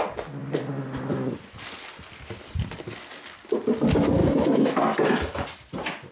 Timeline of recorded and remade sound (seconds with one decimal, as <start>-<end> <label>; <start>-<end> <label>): 0.0-4.2 recorded; 4.2-4.8 remade; 4.8-6.1 recorded